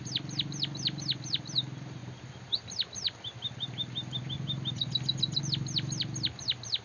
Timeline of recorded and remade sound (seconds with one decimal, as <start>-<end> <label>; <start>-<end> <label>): 0.0-6.8 recorded